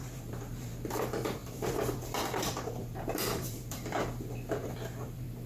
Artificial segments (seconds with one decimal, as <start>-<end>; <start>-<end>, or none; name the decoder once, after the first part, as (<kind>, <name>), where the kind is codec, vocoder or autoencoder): 0.0-5.5 (vocoder, BigVGAN v2)

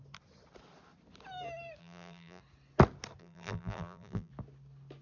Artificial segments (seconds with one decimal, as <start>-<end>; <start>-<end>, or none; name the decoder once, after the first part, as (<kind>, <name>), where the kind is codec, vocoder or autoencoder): 1.8-2.4 (vocoder, BigVGAN v2); 3.2-4.3

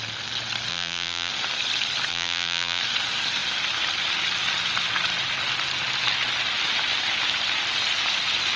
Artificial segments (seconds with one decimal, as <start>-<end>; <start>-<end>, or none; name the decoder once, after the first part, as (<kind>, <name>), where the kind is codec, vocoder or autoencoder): 0.7-1.3 (vocoder, BigVGAN v2); 2.1-2.8

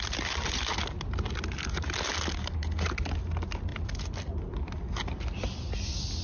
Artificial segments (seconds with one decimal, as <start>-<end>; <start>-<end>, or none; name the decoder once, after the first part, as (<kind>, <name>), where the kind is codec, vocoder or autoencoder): none